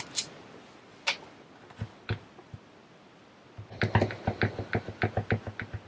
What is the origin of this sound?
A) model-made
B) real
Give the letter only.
B